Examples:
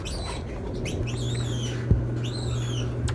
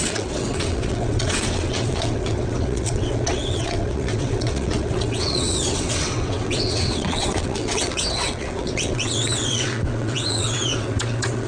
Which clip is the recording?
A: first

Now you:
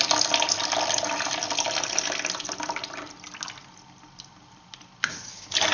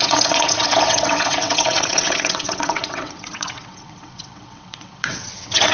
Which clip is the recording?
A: first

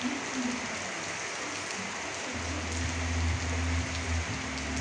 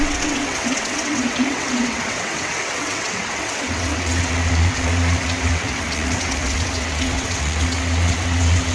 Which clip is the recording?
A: first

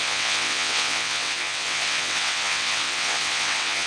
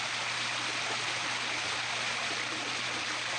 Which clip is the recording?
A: second